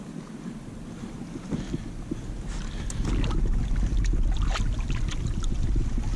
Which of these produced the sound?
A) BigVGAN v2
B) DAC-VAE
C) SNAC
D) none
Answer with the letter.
D